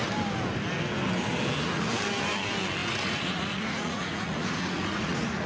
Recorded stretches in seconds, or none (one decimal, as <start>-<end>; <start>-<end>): 0.0-2.8